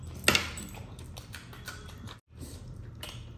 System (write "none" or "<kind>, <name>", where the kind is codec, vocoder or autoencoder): none